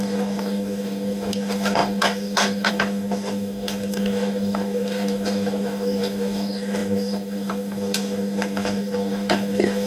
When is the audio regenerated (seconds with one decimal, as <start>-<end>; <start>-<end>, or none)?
0.0-9.9